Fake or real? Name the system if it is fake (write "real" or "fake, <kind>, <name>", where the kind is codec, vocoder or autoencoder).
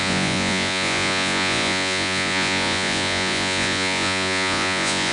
fake, vocoder, Vocos